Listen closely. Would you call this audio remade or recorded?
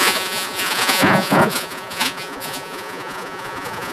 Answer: remade